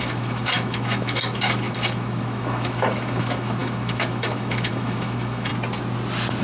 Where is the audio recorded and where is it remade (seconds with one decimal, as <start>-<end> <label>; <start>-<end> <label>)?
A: 0.0-5.5 remade; 5.5-6.4 recorded